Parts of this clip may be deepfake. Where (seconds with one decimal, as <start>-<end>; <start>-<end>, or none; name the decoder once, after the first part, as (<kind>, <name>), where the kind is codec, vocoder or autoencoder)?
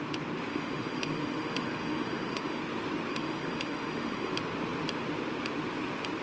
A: 0.5-2.6 (autoencoder, DAC-VAE); 3.1-4.3